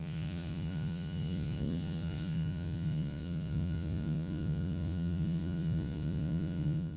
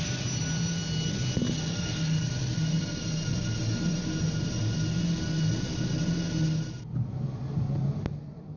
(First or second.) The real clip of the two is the second